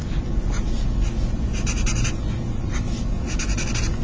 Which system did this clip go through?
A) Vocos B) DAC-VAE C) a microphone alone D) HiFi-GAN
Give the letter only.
C